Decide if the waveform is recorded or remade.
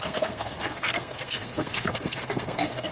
remade